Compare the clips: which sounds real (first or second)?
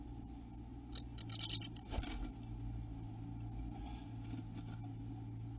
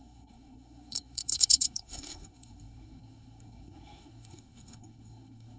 first